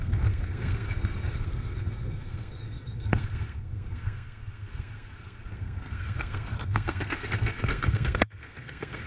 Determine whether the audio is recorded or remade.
remade